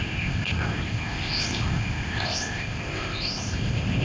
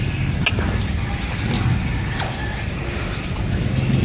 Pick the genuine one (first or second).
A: second